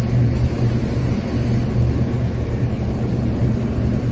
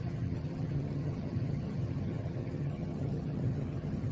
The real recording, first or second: first